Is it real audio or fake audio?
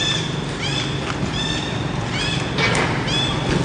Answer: real